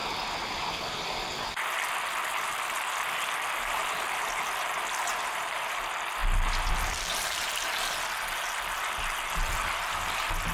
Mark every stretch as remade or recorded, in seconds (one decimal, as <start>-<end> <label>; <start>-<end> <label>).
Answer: 0.0-5.1 recorded; 5.1-5.8 remade; 5.8-10.5 recorded